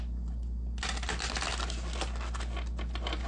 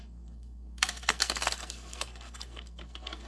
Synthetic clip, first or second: second